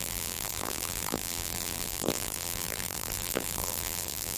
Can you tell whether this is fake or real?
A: fake